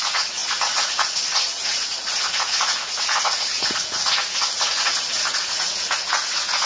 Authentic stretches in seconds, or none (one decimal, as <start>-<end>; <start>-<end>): none